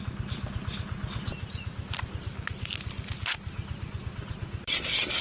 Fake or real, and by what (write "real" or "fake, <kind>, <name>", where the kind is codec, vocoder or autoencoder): real